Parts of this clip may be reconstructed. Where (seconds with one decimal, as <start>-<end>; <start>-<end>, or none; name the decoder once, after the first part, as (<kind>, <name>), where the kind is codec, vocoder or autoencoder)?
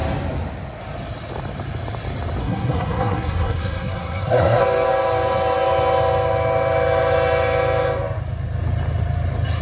2.4-4.6 (codec, SNAC)